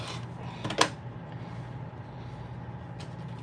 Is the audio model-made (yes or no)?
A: no